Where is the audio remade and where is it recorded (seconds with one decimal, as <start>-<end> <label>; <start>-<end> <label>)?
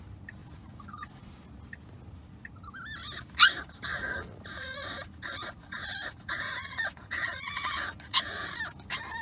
0.0-0.4 recorded; 0.4-1.3 remade; 1.3-3.9 recorded; 3.9-8.6 remade; 8.6-9.2 recorded